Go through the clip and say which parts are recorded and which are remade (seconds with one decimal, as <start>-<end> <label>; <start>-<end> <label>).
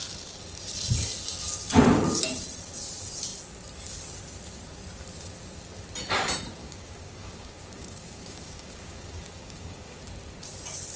0.0-6.6 recorded; 6.6-10.0 remade; 10.0-11.0 recorded